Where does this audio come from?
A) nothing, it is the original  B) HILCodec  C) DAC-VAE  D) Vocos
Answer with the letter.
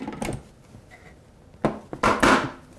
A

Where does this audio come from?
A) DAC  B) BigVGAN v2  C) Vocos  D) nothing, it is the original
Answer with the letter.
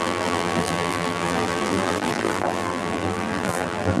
B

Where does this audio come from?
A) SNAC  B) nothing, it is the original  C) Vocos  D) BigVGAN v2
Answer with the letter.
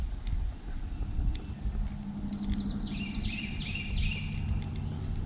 B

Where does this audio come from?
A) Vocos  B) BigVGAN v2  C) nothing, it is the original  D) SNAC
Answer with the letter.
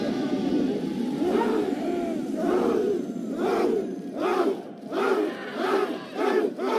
B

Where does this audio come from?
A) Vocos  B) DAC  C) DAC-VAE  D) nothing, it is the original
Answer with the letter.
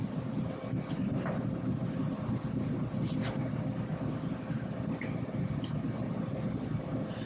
D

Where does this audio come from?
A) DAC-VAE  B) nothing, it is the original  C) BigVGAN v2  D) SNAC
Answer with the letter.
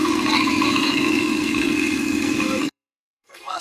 D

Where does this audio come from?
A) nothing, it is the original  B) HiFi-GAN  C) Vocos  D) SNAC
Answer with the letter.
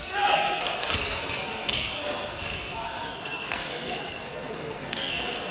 D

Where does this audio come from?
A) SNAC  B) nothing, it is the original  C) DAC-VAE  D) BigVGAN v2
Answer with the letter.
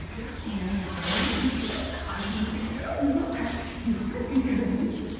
B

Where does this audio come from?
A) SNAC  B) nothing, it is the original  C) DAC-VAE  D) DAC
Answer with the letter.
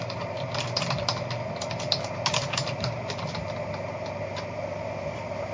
B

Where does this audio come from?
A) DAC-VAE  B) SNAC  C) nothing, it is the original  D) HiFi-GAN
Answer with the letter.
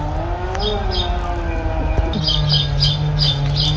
C